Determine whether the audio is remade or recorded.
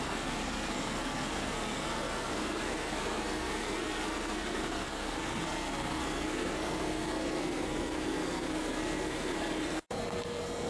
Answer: remade